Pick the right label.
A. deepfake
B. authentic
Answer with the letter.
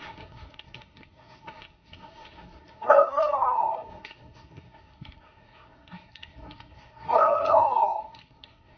A